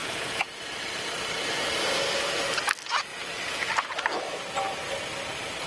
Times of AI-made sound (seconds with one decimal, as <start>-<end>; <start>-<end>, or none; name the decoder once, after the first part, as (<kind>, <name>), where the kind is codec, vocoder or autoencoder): 0.0-0.6 (vocoder, Vocos); 3.1-3.7